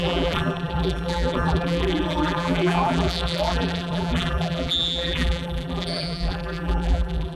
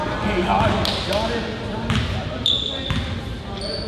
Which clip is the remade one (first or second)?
first